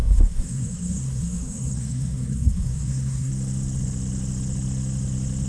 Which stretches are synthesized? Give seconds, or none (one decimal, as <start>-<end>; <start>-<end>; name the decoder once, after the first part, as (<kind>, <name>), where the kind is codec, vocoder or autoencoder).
0.0-3.3 (codec, SNAC)